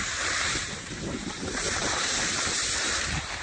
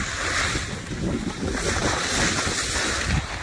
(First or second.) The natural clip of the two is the second